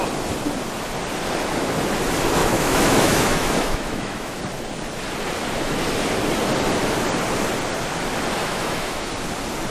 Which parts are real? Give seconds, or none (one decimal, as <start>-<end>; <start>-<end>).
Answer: 0.0-2.4; 4.4-8.4; 9.1-9.7